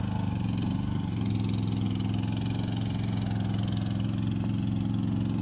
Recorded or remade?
recorded